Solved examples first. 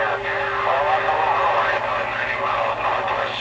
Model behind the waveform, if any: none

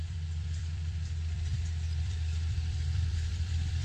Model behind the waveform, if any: vocoder, BigVGAN v2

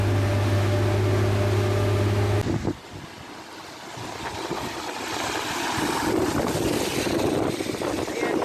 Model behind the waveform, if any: none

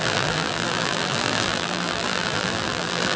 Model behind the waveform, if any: vocoder, BigVGAN v2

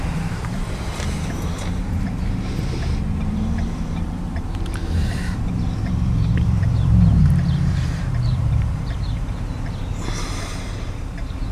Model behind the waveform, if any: vocoder, BigVGAN v2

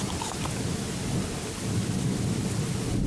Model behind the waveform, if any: vocoder, BigVGAN v2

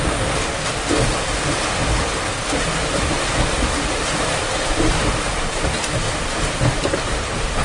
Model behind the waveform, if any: none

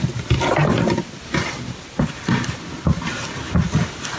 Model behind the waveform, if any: none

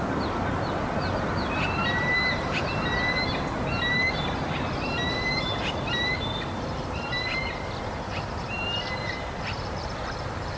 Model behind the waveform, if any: none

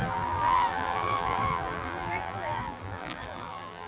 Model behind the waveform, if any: vocoder, BigVGAN v2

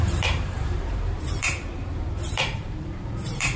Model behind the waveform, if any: vocoder, BigVGAN v2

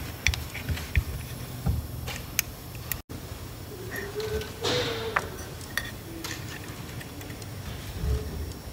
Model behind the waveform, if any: none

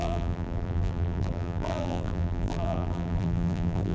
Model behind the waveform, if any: vocoder, BigVGAN v2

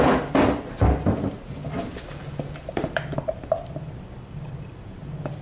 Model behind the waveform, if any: vocoder, BigVGAN v2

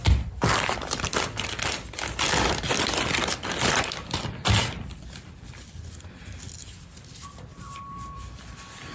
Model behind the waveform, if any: vocoder, BigVGAN v2